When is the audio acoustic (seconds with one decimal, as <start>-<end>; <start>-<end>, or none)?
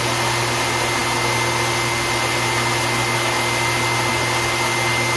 0.0-5.2